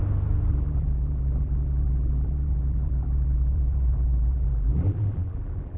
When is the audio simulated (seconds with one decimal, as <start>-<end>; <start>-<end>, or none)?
0.5-5.8